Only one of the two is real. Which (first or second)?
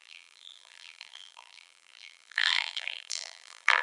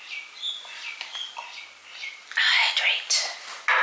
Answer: second